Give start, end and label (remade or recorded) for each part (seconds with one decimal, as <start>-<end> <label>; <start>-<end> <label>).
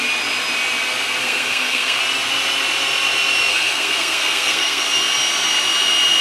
0.0-1.2 recorded; 1.2-2.0 remade; 2.0-3.5 recorded; 3.5-4.8 remade; 4.8-6.2 recorded